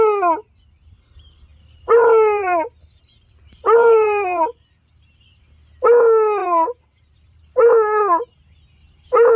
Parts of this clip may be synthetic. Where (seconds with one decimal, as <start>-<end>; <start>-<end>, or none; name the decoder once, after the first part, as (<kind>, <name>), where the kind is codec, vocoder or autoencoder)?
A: 1.5-5.4 (vocoder, BigVGAN v2); 6.4-7.4